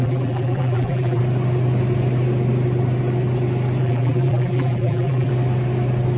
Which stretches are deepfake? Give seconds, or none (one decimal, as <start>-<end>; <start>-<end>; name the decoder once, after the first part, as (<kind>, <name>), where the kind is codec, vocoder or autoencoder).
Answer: 0.0-1.2 (vocoder, BigVGAN v2); 3.8-5.3